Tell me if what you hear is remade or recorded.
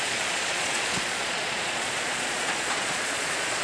remade